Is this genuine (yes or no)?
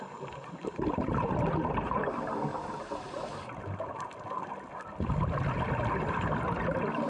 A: yes